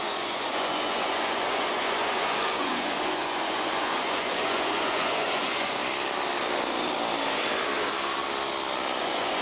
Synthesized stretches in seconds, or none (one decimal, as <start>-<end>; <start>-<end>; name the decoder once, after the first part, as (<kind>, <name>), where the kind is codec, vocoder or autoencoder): 0.0-5.8 (vocoder, Vocos); 9.0-9.4